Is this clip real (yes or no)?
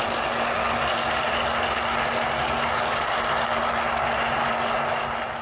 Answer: yes